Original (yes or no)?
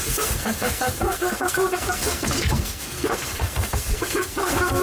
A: no